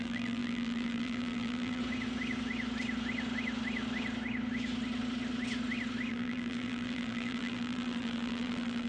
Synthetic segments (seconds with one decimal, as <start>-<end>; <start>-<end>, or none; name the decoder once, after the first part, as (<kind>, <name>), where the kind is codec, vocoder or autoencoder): 0.0-1.8 (vocoder, BigVGAN v2); 6.1-8.9